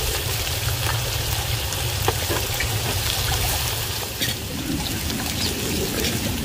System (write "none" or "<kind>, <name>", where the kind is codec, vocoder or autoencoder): none